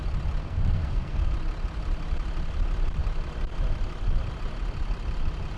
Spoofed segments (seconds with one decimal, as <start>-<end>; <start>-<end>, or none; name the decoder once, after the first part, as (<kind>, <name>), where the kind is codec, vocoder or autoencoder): 0.4-1.3 (codec, SNAC)